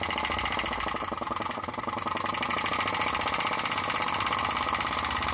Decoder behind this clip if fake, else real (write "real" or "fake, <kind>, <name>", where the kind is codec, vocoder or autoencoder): real